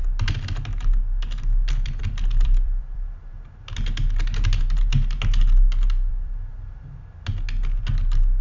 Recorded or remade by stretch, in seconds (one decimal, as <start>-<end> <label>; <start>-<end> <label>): 0.0-1.7 recorded; 1.7-3.3 remade; 3.3-6.1 recorded; 6.1-6.5 remade; 6.5-8.4 recorded